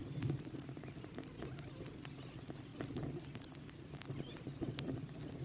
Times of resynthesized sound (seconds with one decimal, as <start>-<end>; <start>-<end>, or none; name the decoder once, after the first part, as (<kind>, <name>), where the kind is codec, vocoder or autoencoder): 0.0-1.8 (vocoder, BigVGAN v2); 2.7-5.4